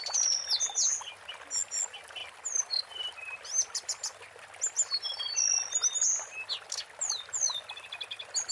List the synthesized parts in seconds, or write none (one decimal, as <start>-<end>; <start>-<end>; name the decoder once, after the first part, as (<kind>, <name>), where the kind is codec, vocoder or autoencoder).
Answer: none